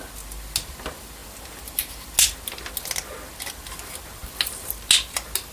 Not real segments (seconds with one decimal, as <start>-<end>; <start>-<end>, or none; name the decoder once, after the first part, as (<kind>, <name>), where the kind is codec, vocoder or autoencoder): none